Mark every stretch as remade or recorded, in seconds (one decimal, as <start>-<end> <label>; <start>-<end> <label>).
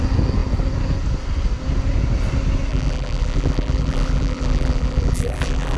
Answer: 0.0-2.7 recorded; 2.7-5.8 remade